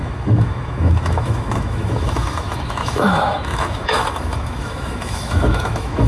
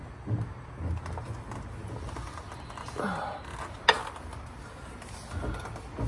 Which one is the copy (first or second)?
first